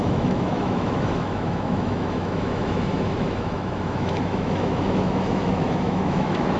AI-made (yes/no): yes